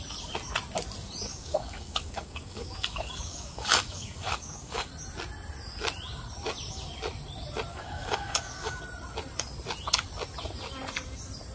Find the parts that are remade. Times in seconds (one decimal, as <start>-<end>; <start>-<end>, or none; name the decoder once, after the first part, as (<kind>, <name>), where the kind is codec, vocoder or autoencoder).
1.3-4.9 (codec, DAC); 7.7-8.8

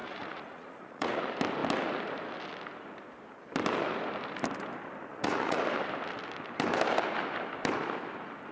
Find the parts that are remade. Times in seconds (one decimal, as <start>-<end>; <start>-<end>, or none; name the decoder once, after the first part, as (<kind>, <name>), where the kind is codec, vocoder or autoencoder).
0.0-1.2 (vocoder, Vocos); 5.1-5.6